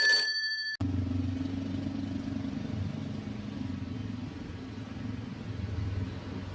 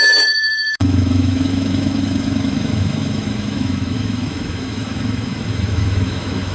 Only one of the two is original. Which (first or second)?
first